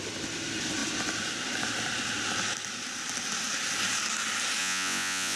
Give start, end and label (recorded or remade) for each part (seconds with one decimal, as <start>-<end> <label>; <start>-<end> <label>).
0.0-4.6 recorded; 4.6-5.4 remade